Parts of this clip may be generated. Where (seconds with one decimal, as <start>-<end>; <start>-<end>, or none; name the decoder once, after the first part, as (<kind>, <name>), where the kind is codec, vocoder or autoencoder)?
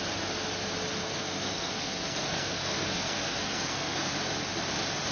1.0-4.1 (codec, SNAC)